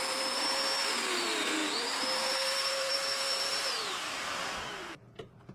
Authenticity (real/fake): fake